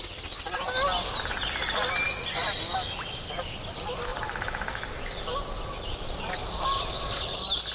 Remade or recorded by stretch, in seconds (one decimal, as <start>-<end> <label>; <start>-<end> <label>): 0.0-4.1 recorded; 4.1-7.2 remade; 7.2-7.7 recorded